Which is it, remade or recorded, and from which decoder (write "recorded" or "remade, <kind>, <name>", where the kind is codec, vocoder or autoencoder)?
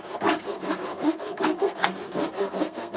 remade, codec, SNAC